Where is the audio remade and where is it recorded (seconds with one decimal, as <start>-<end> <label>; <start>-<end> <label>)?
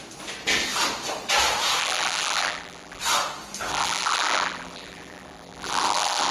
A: 0.0-1.8 recorded; 1.8-3.0 remade; 3.0-3.7 recorded; 3.7-6.3 remade